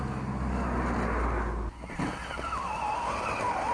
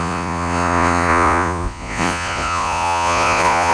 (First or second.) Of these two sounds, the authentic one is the first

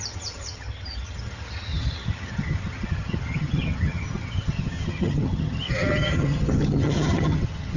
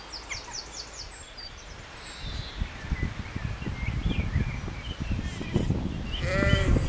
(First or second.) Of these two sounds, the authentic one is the second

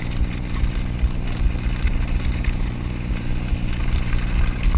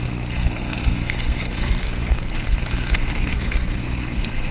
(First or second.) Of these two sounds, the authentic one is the first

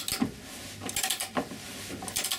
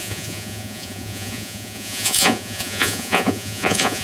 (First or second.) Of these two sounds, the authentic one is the first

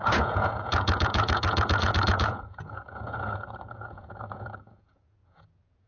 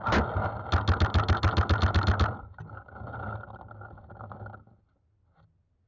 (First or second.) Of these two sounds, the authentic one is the second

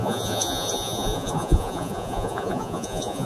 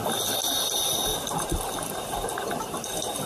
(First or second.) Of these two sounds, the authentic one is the second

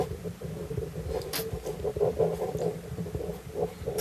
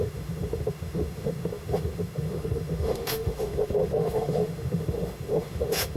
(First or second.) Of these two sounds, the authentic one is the first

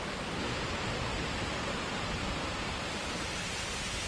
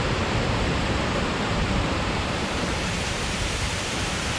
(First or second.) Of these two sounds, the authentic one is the first